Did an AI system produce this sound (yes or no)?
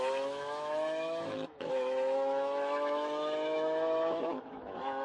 yes